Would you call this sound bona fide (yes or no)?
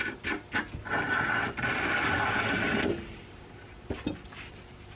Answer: yes